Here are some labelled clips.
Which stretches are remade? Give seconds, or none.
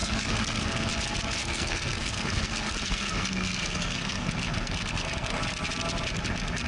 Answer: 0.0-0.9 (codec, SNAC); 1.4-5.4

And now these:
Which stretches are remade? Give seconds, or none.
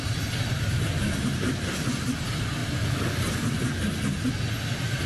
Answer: none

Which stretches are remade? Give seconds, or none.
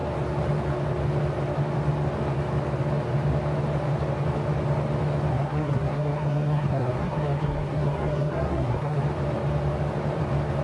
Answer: 5.3-9.0 (codec, SNAC)